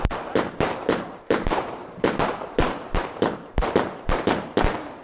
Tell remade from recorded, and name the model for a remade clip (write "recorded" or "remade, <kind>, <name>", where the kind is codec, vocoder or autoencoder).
remade, vocoder, BigVGAN v2